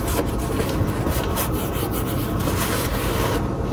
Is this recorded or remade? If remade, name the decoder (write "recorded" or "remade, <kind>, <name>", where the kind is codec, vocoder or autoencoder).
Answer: remade, vocoder, BigVGAN v2